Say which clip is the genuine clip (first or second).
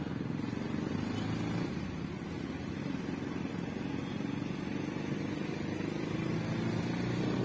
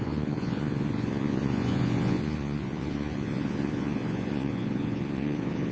first